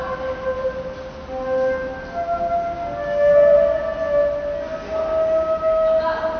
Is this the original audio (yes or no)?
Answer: yes